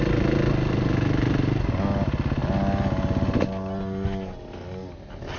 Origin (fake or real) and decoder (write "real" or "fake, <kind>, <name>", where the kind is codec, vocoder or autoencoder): real